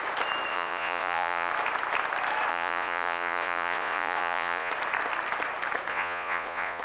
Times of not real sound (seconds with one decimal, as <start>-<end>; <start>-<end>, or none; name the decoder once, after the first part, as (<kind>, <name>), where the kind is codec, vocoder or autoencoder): 0.5-1.5 (vocoder, Vocos); 2.5-4.7; 5.9-6.8